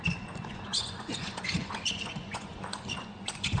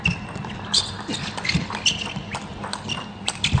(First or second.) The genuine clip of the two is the second